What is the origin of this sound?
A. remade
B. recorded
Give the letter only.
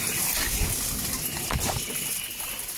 B